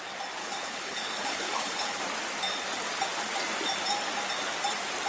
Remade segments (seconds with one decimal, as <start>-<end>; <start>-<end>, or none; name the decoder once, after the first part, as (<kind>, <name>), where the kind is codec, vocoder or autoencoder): 0.4-2.0 (codec, HILCodec)